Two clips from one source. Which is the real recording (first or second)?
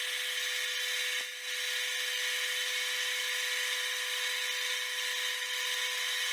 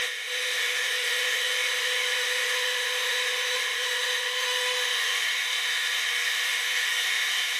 first